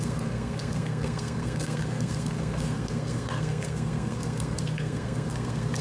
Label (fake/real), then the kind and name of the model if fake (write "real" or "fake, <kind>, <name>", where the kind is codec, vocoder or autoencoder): fake, codec, SNAC